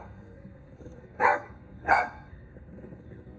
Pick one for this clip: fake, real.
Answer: fake